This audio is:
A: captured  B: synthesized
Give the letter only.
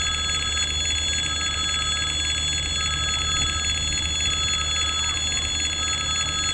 A